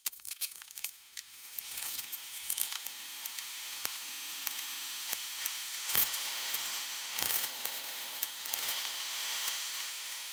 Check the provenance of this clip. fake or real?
fake